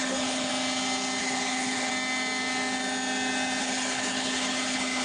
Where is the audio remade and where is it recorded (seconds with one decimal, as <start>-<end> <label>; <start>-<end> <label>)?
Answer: 0.0-0.5 remade; 0.5-1.2 recorded; 1.2-1.9 remade; 1.9-3.6 recorded; 3.6-5.0 remade